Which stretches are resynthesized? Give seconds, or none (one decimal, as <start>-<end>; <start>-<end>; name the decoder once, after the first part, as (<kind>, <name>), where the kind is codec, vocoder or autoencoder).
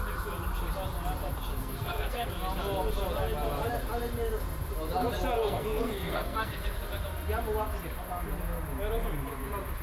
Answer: 1.5-2.3 (codec, SNAC); 5.4-6.8